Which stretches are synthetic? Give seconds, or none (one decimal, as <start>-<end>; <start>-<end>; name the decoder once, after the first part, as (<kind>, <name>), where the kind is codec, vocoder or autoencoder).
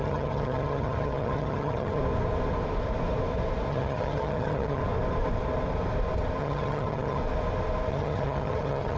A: 0.0-2.0 (vocoder, HiFi-GAN); 3.7-4.8; 6.4-7.2; 7.9-9.0